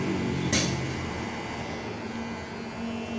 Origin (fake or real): real